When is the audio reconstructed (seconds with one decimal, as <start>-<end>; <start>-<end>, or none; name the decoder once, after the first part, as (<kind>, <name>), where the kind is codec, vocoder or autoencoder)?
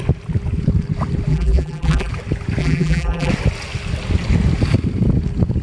1.3-2.1 (vocoder, BigVGAN v2); 2.6-3.3